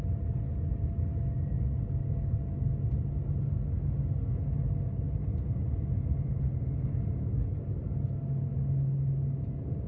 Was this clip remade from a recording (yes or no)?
no